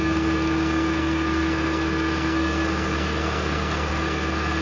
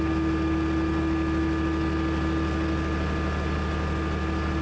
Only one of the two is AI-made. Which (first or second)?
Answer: first